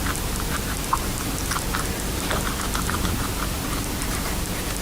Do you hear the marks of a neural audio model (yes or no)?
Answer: yes